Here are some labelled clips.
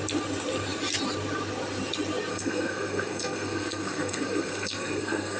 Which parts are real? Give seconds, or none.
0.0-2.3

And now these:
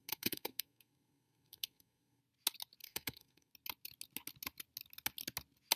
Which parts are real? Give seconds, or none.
2.2-2.8; 3.5-5.8